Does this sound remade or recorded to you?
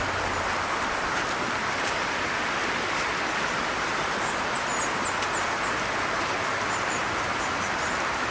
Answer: recorded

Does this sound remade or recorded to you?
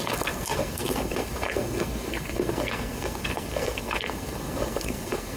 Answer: remade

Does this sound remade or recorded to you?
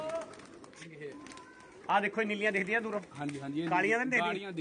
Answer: recorded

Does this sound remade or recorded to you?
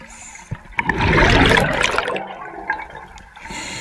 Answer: recorded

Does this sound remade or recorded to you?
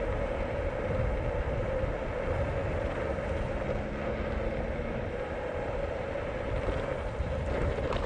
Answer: recorded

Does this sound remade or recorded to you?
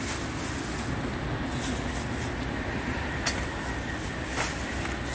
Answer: recorded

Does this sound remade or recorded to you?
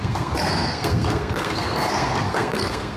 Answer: remade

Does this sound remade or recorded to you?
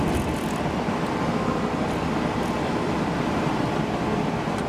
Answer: recorded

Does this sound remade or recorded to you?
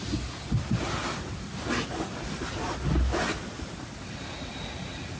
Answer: recorded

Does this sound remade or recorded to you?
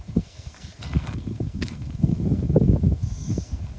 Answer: remade